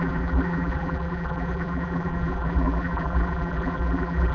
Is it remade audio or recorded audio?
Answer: remade